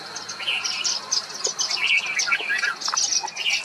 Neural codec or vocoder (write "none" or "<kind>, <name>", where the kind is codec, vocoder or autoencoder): none